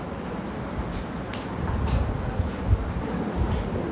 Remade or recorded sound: recorded